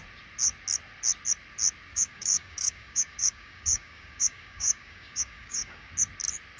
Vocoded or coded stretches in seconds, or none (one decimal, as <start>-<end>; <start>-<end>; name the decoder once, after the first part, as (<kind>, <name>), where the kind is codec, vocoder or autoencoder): 1.9-5.9 (codec, DAC)